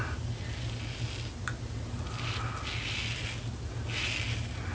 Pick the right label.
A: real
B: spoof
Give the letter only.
A